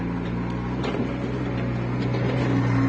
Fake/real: real